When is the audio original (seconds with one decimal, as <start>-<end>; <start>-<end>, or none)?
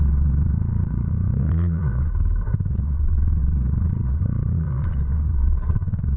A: 2.1-2.7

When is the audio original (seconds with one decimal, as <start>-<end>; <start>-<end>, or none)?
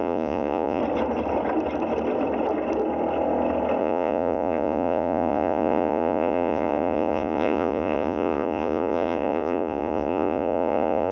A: 0.8-3.8